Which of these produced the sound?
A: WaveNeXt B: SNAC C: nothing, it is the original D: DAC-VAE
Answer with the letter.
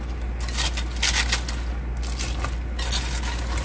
C